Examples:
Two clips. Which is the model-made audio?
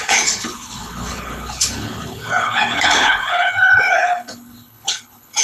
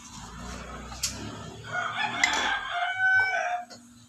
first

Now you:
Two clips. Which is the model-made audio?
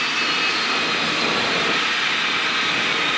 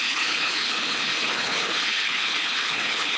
second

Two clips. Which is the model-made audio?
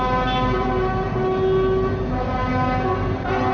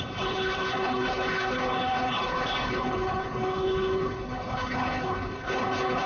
second